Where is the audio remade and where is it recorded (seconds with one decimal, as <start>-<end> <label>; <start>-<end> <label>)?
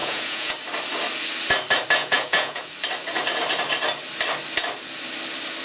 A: 0.0-0.5 remade; 0.5-2.0 recorded; 2.0-2.7 remade; 2.7-5.6 recorded